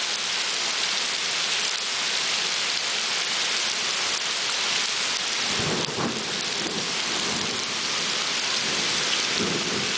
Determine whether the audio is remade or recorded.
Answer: recorded